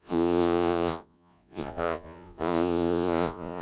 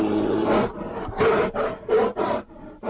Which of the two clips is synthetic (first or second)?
first